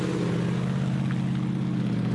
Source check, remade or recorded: recorded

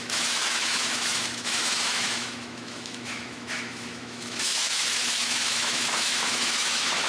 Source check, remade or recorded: remade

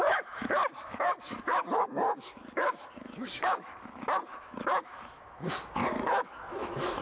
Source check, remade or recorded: remade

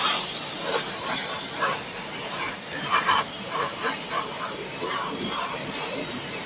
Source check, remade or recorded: remade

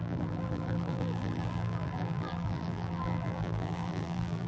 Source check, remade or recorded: remade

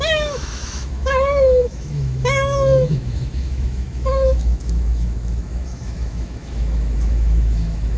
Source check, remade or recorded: remade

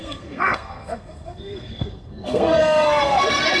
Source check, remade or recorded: remade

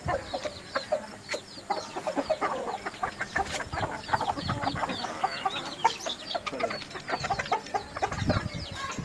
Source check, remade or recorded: recorded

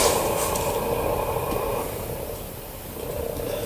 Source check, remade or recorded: recorded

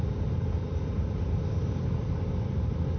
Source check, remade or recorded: recorded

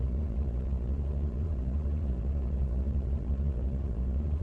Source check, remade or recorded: remade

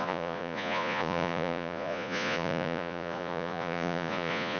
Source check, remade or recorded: remade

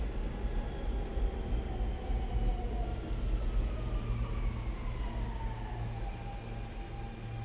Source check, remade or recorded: recorded